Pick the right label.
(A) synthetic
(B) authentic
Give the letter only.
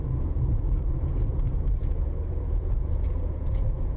A